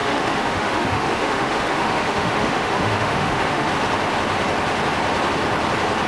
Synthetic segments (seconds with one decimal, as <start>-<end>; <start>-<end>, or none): 0.0-3.7